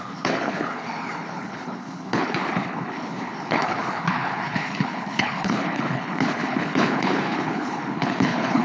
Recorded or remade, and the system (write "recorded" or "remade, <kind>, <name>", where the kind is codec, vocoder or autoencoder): remade, codec, HILCodec